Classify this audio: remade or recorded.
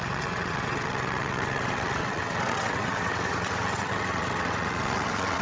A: remade